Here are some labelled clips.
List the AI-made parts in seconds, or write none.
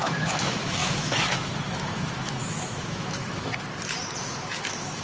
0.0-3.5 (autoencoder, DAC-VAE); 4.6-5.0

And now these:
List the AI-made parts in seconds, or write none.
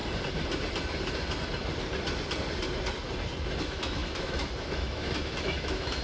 3.6-6.0 (autoencoder, DAC-VAE)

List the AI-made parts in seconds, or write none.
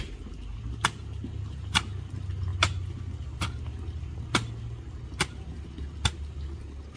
none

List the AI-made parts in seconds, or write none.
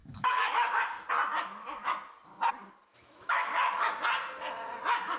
0.0-0.8 (autoencoder, DAC-VAE); 2.9-3.9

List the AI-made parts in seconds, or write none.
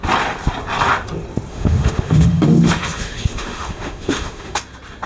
1.5-4.6 (autoencoder, DAC-VAE)